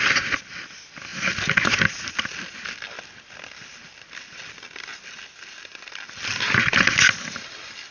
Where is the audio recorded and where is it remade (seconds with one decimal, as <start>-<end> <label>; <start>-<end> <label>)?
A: 0.0-7.9 recorded